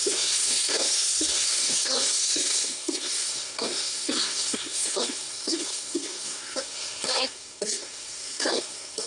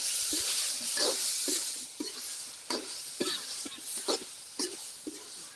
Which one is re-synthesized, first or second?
first